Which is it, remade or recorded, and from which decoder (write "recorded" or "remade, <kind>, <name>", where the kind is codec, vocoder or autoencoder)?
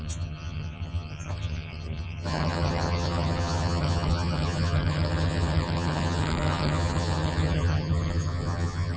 remade, vocoder, HiFi-GAN